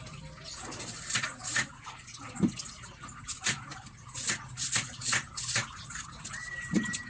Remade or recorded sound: recorded